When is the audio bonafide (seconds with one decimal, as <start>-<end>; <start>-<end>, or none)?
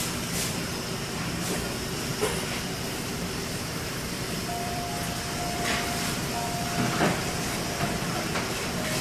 0.0-2.1; 4.9-9.0